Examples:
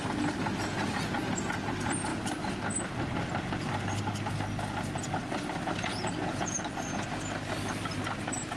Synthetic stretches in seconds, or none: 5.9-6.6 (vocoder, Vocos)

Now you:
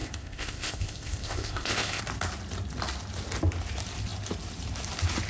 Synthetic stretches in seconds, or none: 0.0-2.0 (codec, ZipCodec)

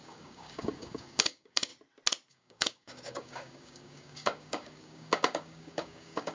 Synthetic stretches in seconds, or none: 0.0-1.7 (codec, DAC); 2.3-6.3

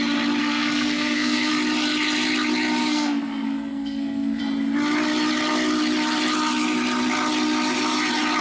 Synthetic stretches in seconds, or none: 0.4-1.5 (codec, SNAC); 2.8-4.4

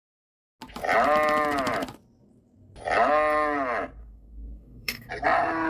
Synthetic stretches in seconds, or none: 4.0-5.1 (codec, DAC)

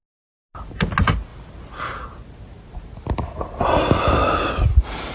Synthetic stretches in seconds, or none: none

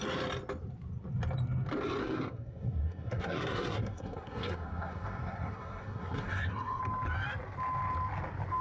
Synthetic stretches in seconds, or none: 2.0-6.8 (codec, SNAC)

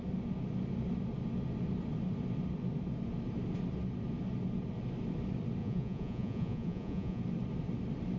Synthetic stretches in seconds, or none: 5.6-7.2 (vocoder, Vocos)